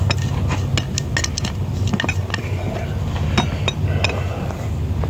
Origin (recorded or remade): recorded